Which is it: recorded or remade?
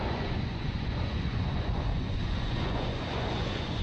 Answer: remade